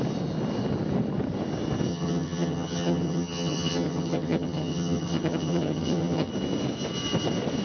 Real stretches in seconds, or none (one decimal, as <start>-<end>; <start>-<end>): 0.0-1.9; 6.3-7.6